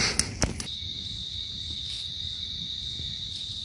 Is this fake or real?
real